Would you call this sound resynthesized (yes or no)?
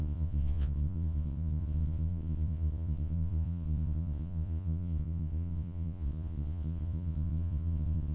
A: yes